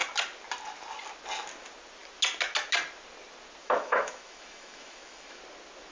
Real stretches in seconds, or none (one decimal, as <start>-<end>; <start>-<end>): 0.0-3.6; 5.4-5.9